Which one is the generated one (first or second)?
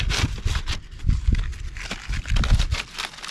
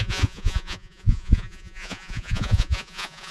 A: second